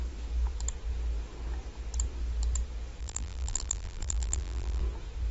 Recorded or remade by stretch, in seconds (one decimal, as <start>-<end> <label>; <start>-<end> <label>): 0.0-3.0 recorded; 3.0-4.8 remade; 4.8-5.3 recorded